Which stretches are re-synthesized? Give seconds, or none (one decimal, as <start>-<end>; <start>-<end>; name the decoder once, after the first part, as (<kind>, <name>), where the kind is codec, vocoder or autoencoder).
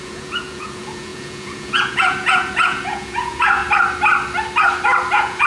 0.0-3.6 (vocoder, Vocos); 5.1-5.5